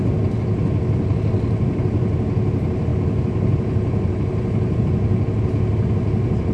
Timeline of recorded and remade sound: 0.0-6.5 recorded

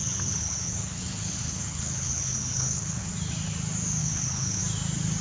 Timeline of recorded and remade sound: 0.0-3.1 remade; 3.1-4.0 recorded; 4.0-4.6 remade; 4.6-5.2 recorded

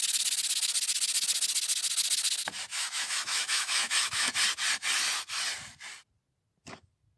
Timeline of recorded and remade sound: 0.0-2.7 recorded; 2.7-4.3 remade; 4.3-7.2 recorded

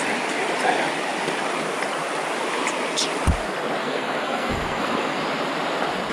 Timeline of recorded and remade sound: 0.0-3.8 recorded; 3.8-5.2 remade; 5.2-6.1 recorded

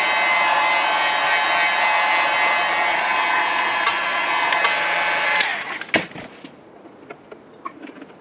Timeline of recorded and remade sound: 0.0-8.2 recorded

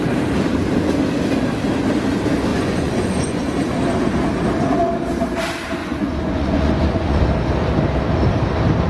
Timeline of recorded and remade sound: 0.0-2.5 recorded; 2.5-3.4 remade; 3.4-5.8 recorded; 5.8-7.2 remade; 7.2-8.9 recorded

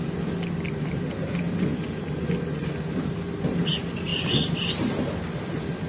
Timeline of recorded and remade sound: 0.0-5.9 recorded

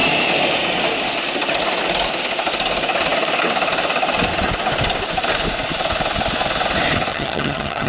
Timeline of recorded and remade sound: 0.0-7.1 recorded; 7.1-7.9 remade